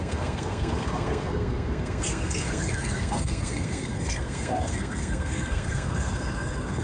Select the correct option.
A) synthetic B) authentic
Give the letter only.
A